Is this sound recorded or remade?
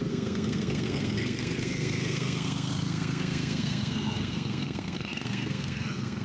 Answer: remade